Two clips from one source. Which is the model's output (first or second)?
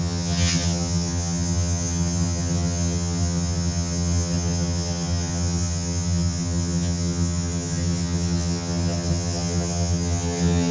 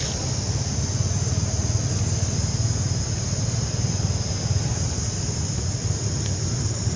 first